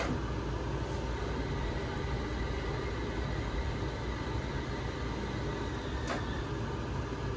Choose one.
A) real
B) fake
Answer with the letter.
A